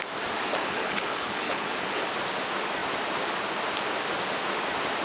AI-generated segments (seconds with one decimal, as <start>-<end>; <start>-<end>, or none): 0.6-2.0